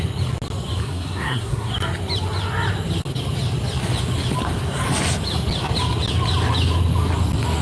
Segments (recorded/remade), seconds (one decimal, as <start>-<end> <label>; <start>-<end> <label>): 0.0-0.8 recorded; 0.8-1.7 remade; 1.7-7.6 recorded